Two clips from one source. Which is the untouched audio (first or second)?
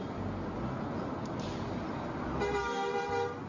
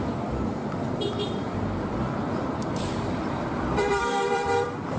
first